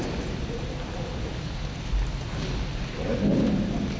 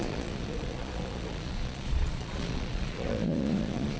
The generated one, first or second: second